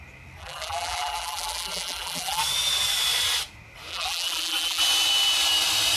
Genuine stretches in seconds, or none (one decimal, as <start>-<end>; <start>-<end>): 0.0-0.4; 2.4-3.9; 4.8-6.0